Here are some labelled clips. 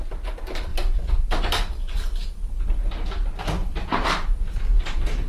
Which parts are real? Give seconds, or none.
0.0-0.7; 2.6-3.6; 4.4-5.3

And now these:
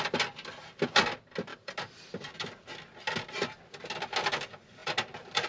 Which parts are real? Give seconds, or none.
0.0-1.5; 2.7-4.8

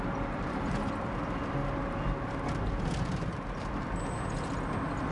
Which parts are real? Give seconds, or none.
1.6-5.1

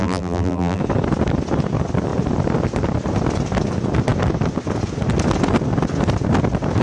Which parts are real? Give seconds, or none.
0.8-6.8

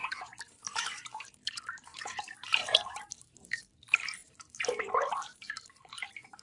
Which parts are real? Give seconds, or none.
none

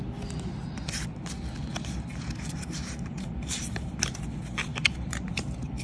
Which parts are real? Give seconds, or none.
0.0-2.1; 3.9-4.7

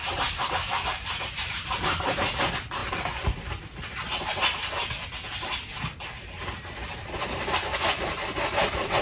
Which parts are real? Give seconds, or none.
2.4-9.0

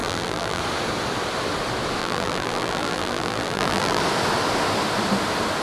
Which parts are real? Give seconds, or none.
0.6-2.0; 4.0-5.6